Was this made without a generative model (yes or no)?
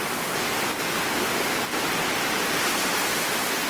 yes